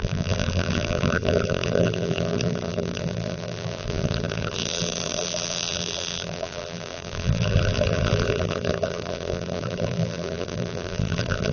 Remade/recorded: remade